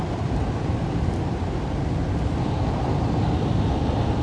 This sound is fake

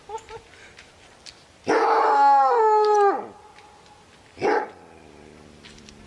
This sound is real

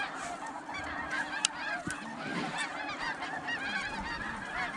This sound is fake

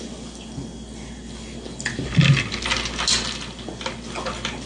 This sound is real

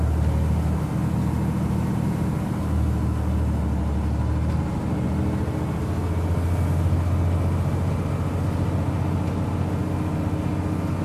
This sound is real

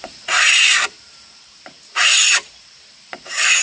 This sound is fake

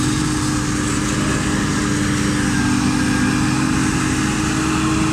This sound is real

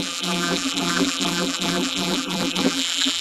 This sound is fake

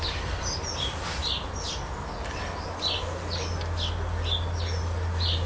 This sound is real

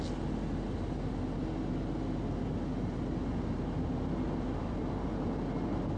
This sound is real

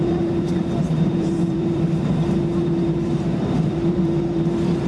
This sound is fake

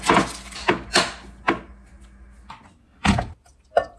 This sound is real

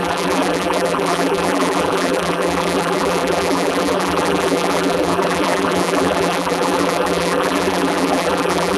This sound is fake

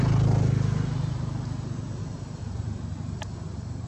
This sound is real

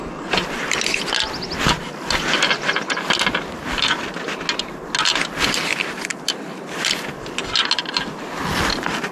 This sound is real